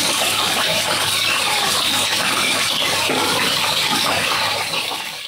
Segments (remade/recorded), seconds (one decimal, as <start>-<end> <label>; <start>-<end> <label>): 0.0-5.3 remade